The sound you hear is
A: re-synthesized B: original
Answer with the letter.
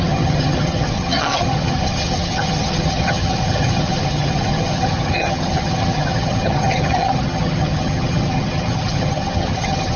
A